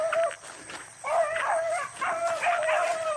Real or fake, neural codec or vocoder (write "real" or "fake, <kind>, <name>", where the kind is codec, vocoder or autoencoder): real